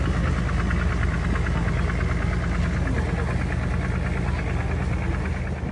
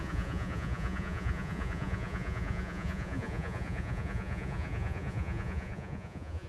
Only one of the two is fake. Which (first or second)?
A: second